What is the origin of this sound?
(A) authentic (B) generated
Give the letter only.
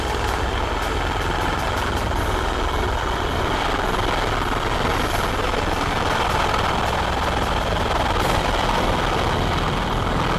A